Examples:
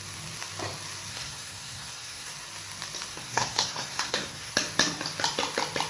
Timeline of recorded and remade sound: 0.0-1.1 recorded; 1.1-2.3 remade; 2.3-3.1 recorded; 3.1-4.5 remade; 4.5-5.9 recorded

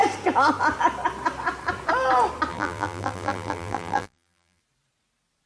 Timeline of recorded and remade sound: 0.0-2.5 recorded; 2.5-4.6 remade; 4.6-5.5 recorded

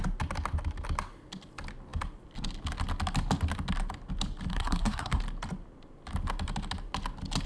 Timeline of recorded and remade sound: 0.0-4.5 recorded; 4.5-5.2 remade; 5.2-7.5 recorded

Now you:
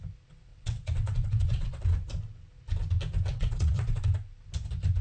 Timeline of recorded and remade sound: 0.0-0.5 recorded; 0.5-1.8 remade; 1.8-3.3 recorded; 3.3-4.0 remade; 4.0-5.0 recorded